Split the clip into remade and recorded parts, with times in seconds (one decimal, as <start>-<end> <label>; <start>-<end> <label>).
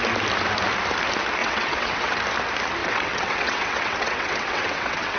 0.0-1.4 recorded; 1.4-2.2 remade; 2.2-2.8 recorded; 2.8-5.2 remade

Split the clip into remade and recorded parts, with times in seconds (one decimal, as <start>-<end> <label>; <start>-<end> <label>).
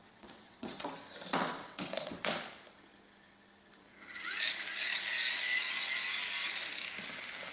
0.0-0.9 remade; 0.9-1.6 recorded; 1.6-2.1 remade; 2.1-7.5 recorded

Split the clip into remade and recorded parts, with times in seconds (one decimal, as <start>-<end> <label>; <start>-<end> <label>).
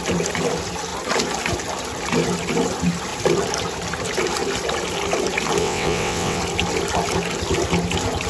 0.0-5.6 recorded; 5.6-6.4 remade; 6.4-8.3 recorded